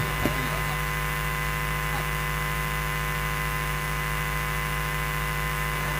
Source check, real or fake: fake